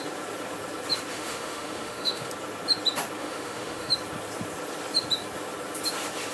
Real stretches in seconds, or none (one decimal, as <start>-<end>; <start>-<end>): 0.0-1.1; 2.3-3.2; 3.9-6.3